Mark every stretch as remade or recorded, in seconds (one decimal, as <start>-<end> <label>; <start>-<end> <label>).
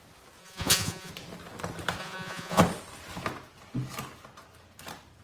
0.0-0.4 recorded; 0.4-1.1 remade; 1.1-2.0 recorded; 2.0-2.6 remade; 2.6-5.2 recorded